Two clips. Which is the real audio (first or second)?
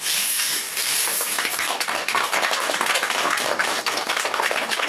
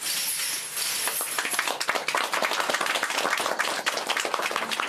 second